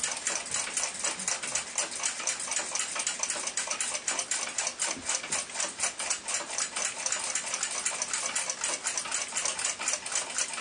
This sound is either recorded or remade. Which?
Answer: recorded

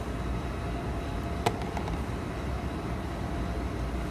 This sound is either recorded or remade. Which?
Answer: recorded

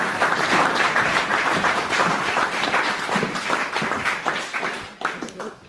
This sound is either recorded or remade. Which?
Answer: remade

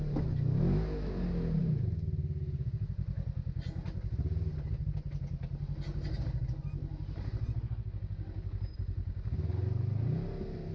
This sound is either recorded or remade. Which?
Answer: recorded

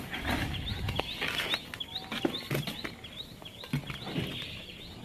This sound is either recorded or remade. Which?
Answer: recorded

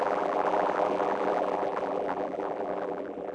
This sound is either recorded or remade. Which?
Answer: remade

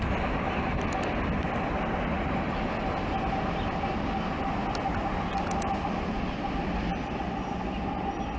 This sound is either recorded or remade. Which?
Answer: recorded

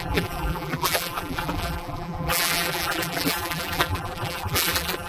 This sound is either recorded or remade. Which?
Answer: remade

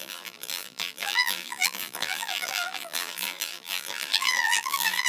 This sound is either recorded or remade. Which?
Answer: remade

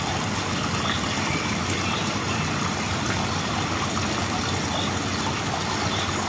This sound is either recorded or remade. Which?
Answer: recorded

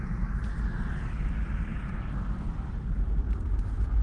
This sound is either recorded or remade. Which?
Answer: recorded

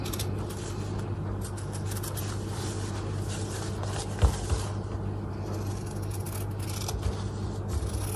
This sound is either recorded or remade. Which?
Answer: recorded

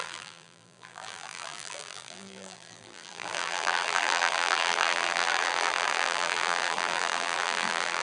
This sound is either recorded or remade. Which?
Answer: remade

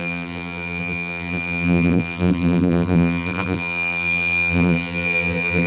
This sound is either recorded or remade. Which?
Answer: remade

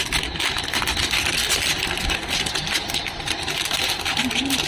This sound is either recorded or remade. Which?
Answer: recorded